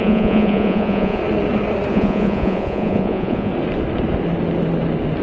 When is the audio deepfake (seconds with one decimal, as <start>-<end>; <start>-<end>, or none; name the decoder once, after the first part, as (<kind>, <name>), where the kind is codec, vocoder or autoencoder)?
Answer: 0.0-1.2 (vocoder, Vocos); 1.9-3.5

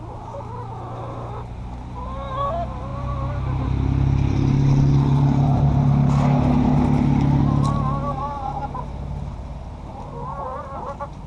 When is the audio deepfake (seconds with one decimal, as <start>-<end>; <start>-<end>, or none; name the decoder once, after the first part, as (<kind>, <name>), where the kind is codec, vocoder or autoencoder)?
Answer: none

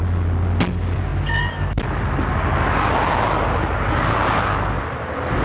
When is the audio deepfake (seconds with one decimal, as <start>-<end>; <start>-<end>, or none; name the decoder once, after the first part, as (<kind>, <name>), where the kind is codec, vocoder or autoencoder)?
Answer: none

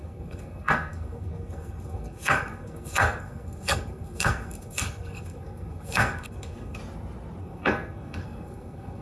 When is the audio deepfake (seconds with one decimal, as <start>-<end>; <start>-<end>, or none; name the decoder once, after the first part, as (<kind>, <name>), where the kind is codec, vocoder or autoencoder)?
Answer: 0.0-6.8 (codec, SNAC); 7.4-9.0

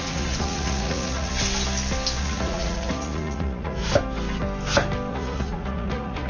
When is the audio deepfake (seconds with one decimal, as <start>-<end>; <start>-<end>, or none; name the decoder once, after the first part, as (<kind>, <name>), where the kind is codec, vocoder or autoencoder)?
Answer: 0.0-1.3 (vocoder, Vocos); 2.2-3.8; 5.1-6.3

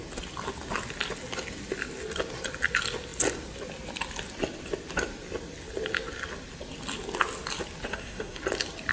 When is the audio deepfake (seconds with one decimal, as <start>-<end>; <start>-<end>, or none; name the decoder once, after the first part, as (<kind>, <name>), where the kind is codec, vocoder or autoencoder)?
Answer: 7.9-8.4 (codec, SNAC)